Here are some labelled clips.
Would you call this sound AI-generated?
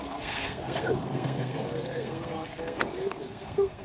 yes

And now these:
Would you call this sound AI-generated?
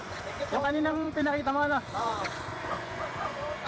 yes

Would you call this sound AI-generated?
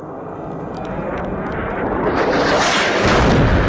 no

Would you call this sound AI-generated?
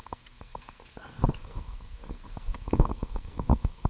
yes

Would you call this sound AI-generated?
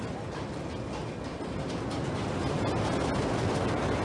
no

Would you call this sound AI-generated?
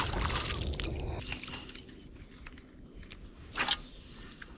no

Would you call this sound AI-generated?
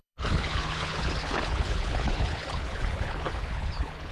yes